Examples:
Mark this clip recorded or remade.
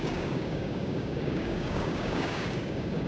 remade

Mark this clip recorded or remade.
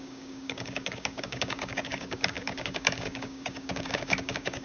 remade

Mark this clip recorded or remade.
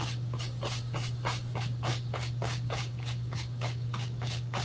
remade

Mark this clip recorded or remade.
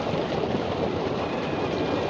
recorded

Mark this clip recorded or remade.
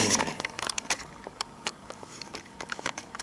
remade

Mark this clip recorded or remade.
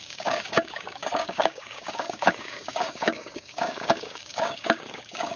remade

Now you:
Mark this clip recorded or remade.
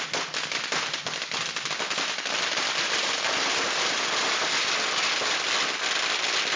recorded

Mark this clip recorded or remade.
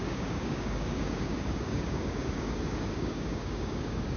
remade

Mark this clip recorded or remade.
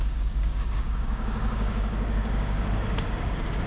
remade